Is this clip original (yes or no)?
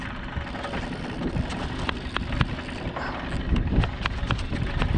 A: yes